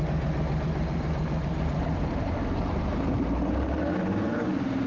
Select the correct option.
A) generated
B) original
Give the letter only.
A